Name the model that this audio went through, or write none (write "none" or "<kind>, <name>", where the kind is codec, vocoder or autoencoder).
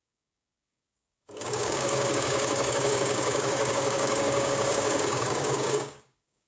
codec, DAC